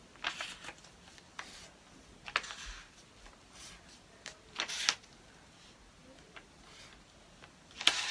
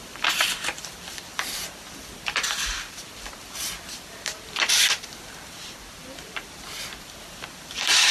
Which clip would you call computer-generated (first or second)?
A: second